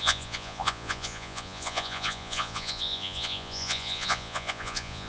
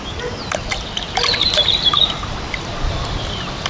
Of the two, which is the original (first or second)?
second